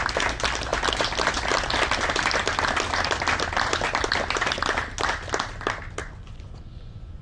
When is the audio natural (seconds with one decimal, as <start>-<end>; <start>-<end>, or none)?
0.0-6.0